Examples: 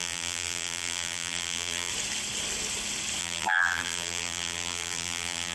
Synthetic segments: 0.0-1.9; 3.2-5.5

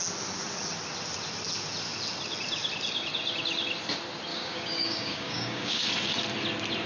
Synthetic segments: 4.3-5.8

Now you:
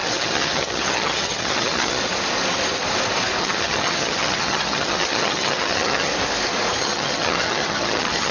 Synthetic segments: 0.0-2.0; 3.4-6.1; 6.8-8.3

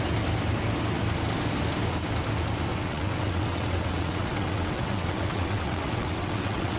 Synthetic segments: 2.7-6.8